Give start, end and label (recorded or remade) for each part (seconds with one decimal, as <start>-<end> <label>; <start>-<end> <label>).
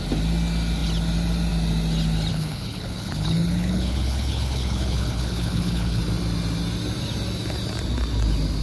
0.0-2.3 recorded; 2.3-6.0 remade; 6.0-8.6 recorded